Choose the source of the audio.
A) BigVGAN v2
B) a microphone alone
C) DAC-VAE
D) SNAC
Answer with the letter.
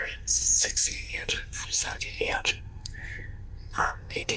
D